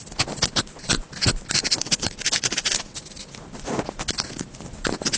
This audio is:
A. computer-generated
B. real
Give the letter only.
B